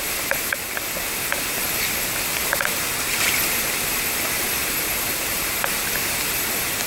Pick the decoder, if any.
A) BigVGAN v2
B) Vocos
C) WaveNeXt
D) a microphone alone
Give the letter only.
A